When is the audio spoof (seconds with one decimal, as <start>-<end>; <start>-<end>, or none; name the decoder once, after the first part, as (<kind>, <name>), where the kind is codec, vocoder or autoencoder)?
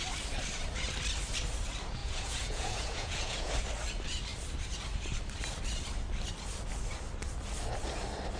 2.0-3.5 (vocoder, Vocos)